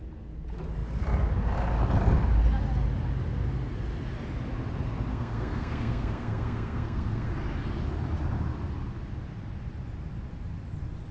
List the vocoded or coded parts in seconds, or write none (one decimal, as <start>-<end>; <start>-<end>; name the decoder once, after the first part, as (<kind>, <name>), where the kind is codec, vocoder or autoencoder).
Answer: 5.1-7.3 (codec, SNAC)